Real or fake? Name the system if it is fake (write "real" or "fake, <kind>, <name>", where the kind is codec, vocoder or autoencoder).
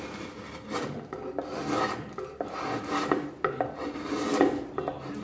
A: real